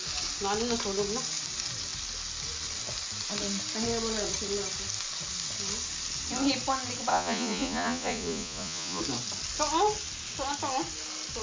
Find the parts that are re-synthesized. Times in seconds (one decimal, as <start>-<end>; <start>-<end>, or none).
7.1-9.0